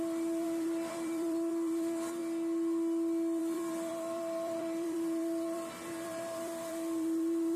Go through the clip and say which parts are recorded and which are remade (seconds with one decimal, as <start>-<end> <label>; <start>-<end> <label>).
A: 0.0-2.2 remade; 2.2-3.4 recorded; 3.4-7.6 remade